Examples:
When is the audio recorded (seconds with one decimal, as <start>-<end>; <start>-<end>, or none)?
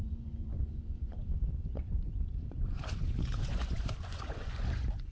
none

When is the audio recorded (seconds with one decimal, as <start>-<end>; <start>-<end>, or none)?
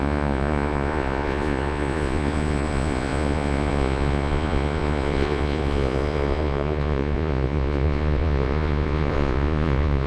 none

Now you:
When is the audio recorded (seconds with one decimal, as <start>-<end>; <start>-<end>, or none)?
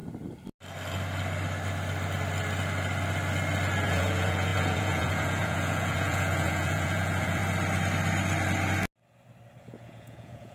0.0-3.8; 7.4-9.6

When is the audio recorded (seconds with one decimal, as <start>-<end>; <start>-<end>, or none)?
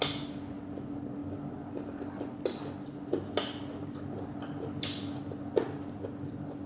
0.0-6.7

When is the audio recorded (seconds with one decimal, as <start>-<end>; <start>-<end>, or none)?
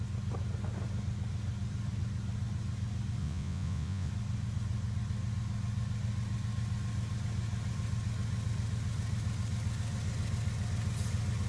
0.0-3.2; 4.1-11.5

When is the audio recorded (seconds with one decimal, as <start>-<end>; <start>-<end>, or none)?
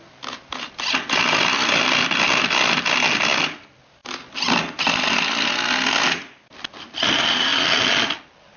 0.0-8.6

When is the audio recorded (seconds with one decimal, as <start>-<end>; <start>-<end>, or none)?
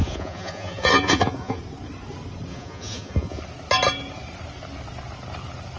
1.6-2.5; 3.4-5.8